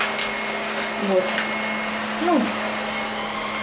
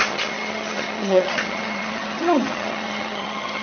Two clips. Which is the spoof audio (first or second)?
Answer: second